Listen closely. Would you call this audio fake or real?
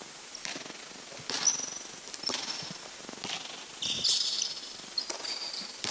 real